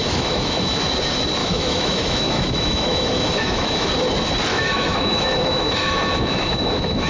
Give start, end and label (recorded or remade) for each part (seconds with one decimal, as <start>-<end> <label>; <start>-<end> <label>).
0.0-0.8 remade; 0.8-1.4 recorded; 1.4-3.9 remade; 3.9-4.5 recorded; 4.5-7.1 remade